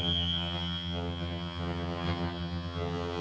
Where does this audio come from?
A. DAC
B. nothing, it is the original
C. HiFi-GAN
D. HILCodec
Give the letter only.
C